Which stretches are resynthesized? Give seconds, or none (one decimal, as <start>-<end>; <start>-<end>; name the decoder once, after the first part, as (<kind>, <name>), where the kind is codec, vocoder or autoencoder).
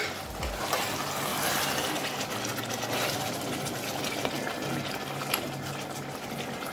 none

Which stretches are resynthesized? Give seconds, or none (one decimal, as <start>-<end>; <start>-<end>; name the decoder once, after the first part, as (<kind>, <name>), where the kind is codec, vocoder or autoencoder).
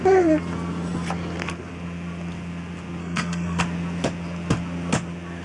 3.0-3.6 (codec, SNAC)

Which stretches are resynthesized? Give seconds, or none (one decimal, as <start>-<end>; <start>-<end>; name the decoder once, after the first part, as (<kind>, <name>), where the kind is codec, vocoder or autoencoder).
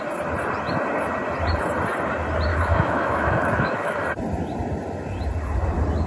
2.5-4.0 (autoencoder, DAC-VAE)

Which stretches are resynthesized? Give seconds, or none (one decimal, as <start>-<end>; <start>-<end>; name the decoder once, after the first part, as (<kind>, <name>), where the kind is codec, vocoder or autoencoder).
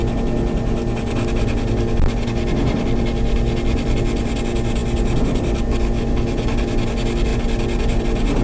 none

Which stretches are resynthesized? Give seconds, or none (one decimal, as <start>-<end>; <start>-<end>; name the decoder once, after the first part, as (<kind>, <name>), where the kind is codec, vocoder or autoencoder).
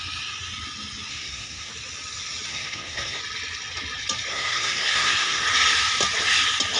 1.1-1.7 (codec, SNAC); 2.5-3.2; 4.3-5.4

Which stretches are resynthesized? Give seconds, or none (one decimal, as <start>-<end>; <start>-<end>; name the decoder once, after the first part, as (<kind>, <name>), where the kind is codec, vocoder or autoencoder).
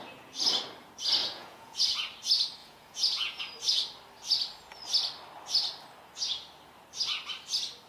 1.2-1.8 (vocoder, Vocos); 2.6-3.4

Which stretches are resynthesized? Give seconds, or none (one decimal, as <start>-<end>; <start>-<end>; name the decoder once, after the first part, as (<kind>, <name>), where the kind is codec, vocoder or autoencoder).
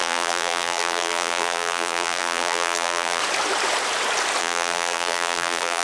0.0-3.2 (vocoder, BigVGAN v2); 4.4-5.8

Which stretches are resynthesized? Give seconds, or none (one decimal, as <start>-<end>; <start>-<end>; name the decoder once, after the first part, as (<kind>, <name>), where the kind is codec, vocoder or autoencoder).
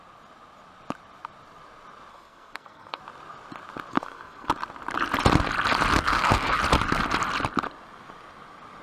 2.1-3.0 (codec, SNAC); 3.9-4.5; 5.9-6.6